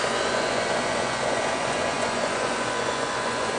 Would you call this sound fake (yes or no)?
yes